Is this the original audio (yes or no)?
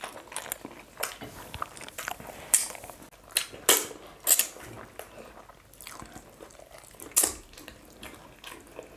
yes